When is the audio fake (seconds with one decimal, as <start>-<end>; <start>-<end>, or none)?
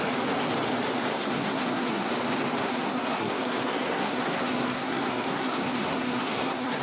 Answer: 1.1-2.1; 2.6-6.8